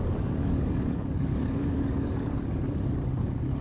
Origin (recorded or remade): remade